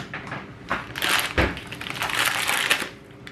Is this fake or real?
real